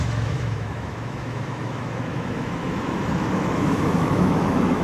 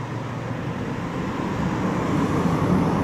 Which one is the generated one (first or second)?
first